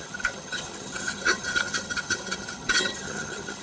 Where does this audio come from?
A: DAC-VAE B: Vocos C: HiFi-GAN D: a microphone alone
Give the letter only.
C